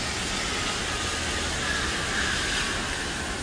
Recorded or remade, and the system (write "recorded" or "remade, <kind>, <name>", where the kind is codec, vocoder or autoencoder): recorded